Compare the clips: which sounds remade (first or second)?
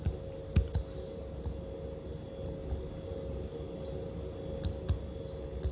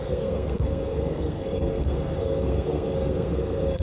second